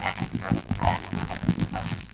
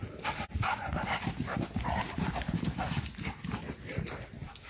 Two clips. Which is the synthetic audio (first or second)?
first